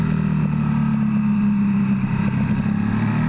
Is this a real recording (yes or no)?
yes